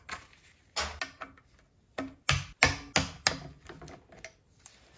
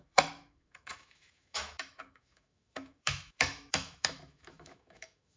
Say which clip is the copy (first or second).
second